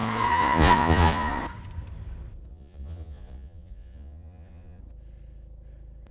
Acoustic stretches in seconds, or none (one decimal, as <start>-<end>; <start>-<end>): 1.4-2.5; 4.8-6.1